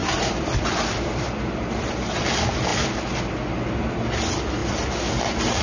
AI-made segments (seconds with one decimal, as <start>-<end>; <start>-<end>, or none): 0.0-2.2; 2.7-3.2